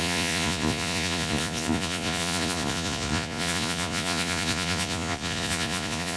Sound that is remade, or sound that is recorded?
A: remade